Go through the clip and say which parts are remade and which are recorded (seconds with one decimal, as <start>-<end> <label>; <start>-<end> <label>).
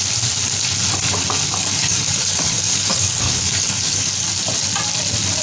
0.0-1.6 recorded; 1.6-4.1 remade; 4.1-5.4 recorded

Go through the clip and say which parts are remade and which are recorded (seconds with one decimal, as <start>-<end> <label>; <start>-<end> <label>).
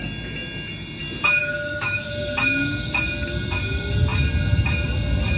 0.0-1.4 recorded; 1.4-2.1 remade; 2.1-5.4 recorded